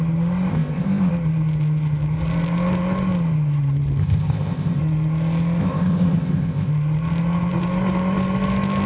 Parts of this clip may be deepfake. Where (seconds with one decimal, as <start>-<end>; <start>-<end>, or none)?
0.5-1.1; 4.0-4.8; 5.6-6.7